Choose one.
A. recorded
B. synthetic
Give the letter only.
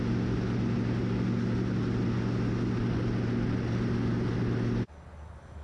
A